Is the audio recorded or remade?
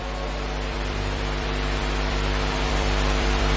remade